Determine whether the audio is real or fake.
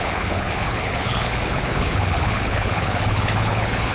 fake